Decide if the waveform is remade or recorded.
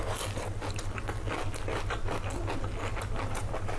recorded